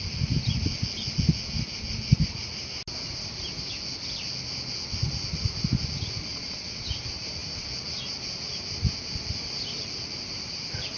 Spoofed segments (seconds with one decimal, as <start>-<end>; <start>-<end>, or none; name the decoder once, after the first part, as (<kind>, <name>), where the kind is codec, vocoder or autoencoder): 6.3-6.8 (vocoder, Vocos)